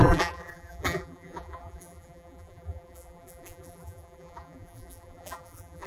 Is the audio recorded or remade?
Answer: remade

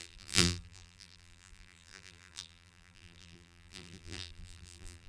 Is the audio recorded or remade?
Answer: remade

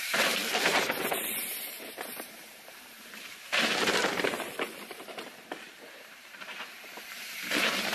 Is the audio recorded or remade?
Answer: remade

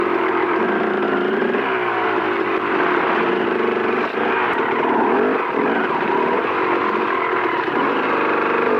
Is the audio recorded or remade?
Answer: remade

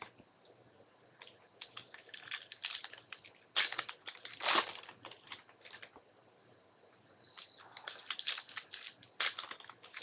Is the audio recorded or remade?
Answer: recorded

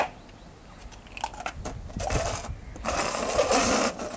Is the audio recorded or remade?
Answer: recorded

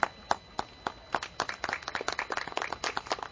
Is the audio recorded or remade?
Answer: recorded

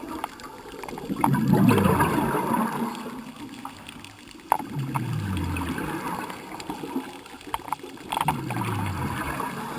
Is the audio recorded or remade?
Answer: recorded